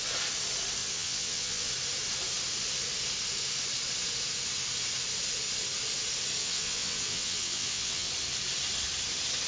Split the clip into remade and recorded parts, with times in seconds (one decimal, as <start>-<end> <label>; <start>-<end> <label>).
0.0-0.8 recorded; 0.8-1.7 remade; 1.7-6.4 recorded; 6.4-8.1 remade; 8.1-9.5 recorded